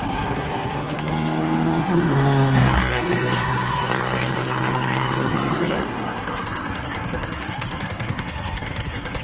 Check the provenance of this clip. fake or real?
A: fake